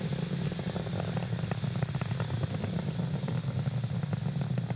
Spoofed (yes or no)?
no